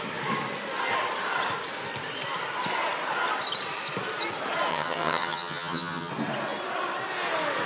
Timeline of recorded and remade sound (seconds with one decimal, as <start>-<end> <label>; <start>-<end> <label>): 0.0-4.7 recorded; 4.7-6.1 remade; 6.1-7.7 recorded